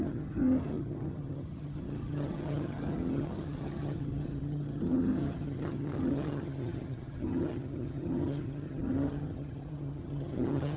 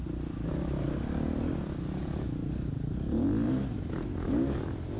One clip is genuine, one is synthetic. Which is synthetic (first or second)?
first